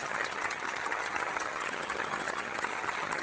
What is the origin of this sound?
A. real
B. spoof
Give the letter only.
B